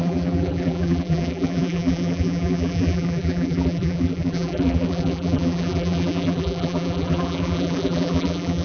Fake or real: fake